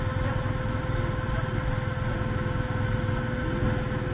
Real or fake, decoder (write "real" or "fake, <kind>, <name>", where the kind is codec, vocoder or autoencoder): real